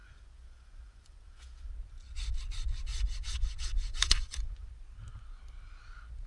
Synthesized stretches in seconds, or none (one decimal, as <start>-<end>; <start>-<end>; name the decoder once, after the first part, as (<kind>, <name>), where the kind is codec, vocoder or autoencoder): 0.0-1.7 (vocoder, Vocos); 2.9-4.7